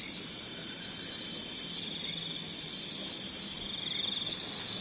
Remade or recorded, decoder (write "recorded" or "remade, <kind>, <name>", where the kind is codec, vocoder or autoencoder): recorded